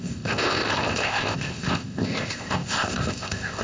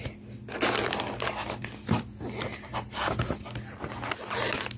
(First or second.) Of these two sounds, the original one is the second